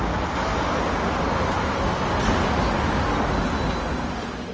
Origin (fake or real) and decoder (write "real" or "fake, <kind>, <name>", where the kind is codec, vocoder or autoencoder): real